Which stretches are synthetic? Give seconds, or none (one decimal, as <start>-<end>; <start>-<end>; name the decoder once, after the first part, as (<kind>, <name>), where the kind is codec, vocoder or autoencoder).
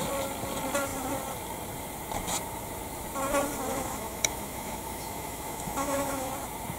3.7-6.3 (autoencoder, DAC-VAE)